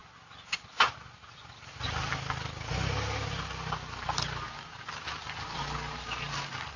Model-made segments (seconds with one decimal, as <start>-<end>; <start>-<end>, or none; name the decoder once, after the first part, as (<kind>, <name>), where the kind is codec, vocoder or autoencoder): none